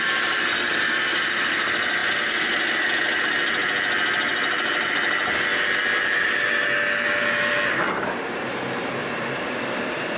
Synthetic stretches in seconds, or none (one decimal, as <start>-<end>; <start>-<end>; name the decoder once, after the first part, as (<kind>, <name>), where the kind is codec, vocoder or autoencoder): 9.0-10.2 (vocoder, BigVGAN v2)